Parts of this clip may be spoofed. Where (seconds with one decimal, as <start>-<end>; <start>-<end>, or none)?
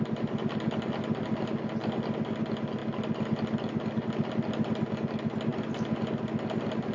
none